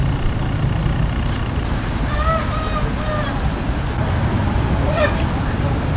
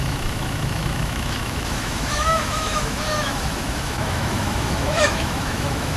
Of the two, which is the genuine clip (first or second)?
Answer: first